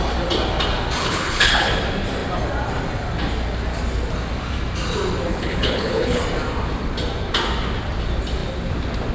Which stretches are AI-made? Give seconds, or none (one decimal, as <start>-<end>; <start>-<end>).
1.0-1.7; 5.3-6.2